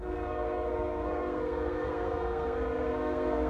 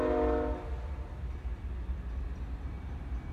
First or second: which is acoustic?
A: second